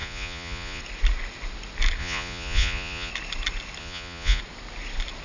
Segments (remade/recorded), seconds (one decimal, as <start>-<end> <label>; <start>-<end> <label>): 0.0-0.8 remade; 0.8-2.0 recorded; 2.0-3.1 remade; 3.1-3.8 recorded; 3.8-4.4 remade; 4.4-5.2 recorded